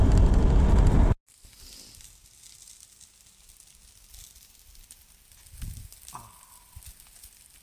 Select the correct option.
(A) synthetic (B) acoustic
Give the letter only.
B